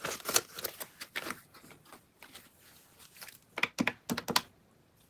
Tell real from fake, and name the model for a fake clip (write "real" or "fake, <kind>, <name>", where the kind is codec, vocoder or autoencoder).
real